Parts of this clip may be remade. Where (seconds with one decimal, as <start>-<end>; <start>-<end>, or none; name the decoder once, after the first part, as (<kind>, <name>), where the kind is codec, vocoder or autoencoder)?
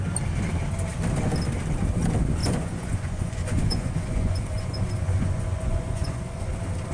2.4-6.5 (vocoder, Vocos)